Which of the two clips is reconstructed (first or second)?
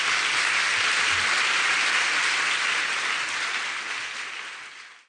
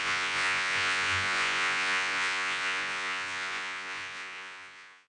second